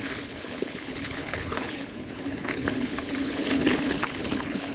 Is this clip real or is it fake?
fake